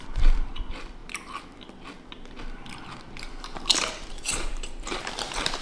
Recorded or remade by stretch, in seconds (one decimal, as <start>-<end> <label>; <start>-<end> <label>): 0.0-1.0 remade; 1.0-4.1 recorded; 4.1-5.6 remade